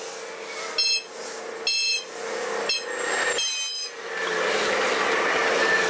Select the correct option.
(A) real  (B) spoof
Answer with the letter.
A